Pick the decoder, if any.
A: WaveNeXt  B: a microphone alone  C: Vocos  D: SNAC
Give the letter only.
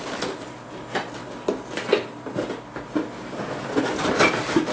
B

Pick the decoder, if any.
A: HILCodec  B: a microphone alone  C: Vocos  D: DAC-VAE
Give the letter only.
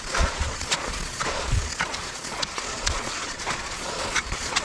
C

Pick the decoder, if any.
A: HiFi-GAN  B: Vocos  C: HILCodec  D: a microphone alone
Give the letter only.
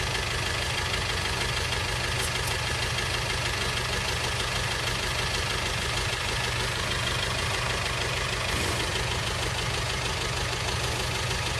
B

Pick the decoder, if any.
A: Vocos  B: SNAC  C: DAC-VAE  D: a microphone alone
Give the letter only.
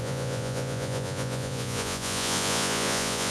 A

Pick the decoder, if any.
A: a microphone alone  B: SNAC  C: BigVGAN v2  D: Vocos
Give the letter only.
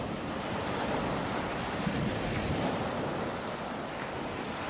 A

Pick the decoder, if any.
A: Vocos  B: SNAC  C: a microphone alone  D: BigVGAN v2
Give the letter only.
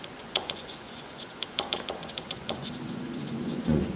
A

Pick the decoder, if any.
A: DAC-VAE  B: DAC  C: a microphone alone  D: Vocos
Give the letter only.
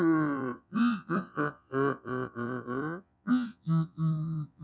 D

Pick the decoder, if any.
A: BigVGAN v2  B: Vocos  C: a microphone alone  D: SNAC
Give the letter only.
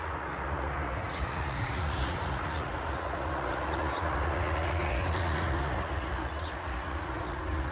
B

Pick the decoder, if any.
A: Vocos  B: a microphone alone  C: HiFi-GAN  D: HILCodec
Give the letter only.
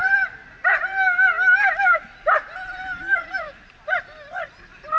B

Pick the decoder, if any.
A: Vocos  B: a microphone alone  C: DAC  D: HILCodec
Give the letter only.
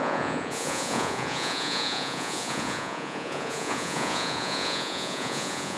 A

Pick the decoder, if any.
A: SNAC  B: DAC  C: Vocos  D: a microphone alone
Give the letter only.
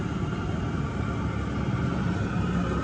D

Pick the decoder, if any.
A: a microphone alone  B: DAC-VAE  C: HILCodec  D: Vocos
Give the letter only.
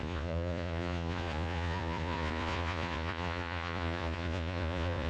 D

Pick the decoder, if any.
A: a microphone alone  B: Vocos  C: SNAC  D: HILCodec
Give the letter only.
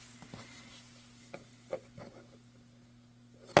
A